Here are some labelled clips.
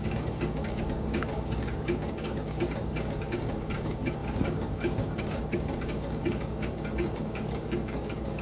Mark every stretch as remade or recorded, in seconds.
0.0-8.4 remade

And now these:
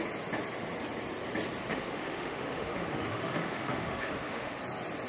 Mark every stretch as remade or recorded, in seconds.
0.0-1.7 recorded; 1.7-4.6 remade; 4.6-5.1 recorded

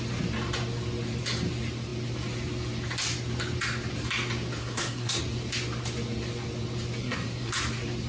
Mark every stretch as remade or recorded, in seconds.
0.0-4.6 recorded; 4.6-5.2 remade; 5.2-7.0 recorded; 7.0-7.5 remade; 7.5-8.1 recorded